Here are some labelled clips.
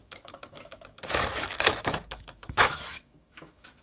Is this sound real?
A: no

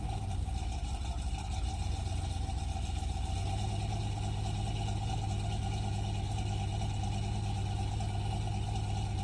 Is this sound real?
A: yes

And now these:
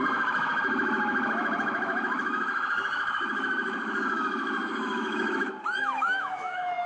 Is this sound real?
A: no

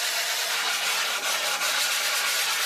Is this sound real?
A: yes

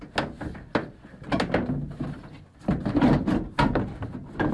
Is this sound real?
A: yes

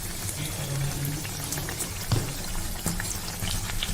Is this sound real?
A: yes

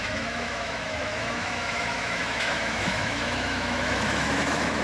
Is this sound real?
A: no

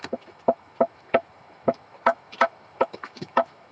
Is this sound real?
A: no